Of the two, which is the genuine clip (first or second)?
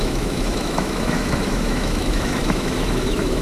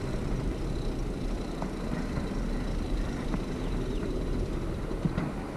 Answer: second